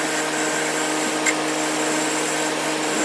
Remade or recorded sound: recorded